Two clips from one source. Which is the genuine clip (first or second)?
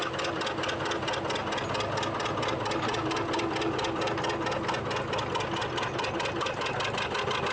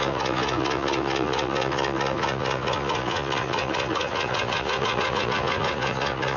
first